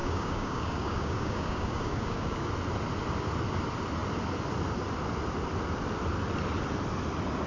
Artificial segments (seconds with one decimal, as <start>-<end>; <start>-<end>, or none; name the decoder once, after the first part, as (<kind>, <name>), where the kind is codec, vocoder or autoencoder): 0.0-2.5 (codec, DAC)